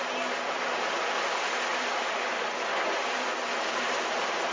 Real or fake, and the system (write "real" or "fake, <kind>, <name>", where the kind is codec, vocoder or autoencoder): real